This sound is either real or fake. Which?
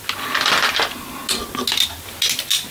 real